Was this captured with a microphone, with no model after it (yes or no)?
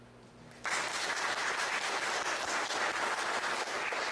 yes